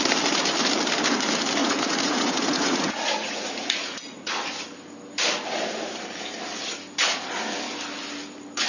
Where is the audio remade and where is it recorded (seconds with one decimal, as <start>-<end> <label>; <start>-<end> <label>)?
0.0-1.6 recorded; 1.6-4.3 remade; 4.3-8.7 recorded